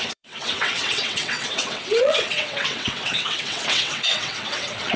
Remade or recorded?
remade